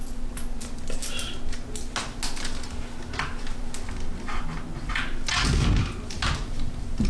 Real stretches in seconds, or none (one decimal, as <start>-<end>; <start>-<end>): 0.0-7.1